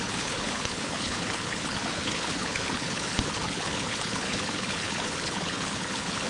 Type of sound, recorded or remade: remade